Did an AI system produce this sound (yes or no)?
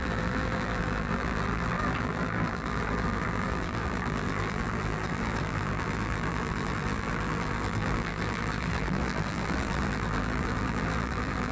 yes